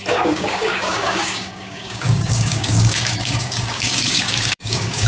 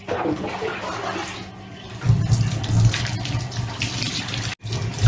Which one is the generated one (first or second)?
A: first